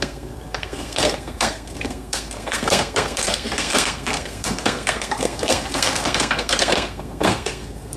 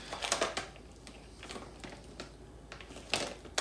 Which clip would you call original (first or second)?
second